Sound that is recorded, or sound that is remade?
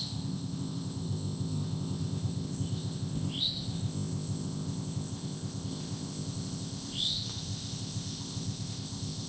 remade